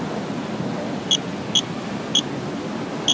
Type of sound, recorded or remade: recorded